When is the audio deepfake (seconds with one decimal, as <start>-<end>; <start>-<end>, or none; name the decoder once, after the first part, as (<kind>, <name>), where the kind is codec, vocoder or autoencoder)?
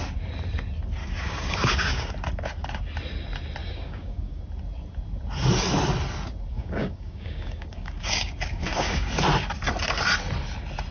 1.0-2.1 (codec, DAC); 3.6-4.4; 6.5-9.1